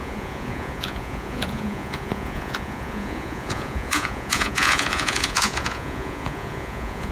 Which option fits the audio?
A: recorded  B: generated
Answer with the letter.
B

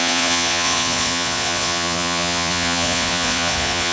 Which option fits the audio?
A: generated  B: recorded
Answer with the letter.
A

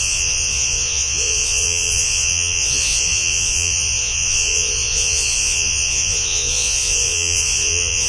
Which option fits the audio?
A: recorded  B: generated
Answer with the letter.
B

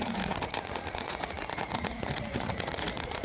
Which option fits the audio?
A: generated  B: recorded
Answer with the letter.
A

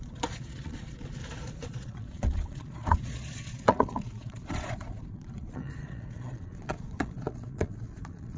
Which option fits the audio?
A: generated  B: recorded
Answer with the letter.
A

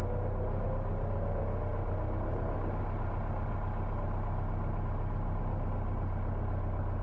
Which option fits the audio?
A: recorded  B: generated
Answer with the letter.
A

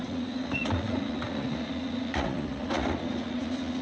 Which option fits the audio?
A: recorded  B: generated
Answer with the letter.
B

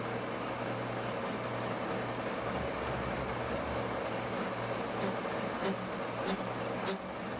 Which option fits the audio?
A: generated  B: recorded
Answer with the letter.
B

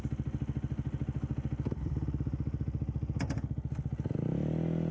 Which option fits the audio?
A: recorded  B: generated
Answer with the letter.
A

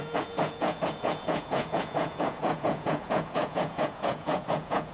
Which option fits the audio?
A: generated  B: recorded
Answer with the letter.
A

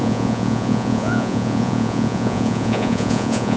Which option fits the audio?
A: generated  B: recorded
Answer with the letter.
A